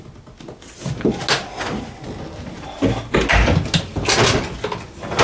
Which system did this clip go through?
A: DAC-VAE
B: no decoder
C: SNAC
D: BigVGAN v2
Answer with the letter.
B